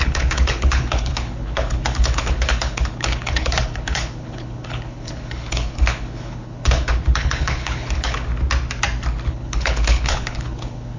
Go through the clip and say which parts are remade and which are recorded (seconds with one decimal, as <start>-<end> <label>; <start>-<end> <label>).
0.0-8.3 remade; 8.3-9.3 recorded; 9.3-11.0 remade